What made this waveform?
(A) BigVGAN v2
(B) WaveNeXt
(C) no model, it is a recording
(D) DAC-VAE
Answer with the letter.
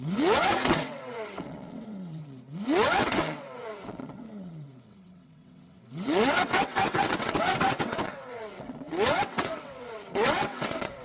B